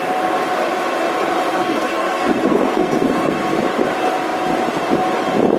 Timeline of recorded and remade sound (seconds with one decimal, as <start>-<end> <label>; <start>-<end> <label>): 0.0-1.5 recorded; 1.5-3.6 remade; 3.6-5.6 recorded